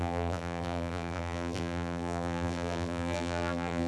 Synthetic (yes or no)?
yes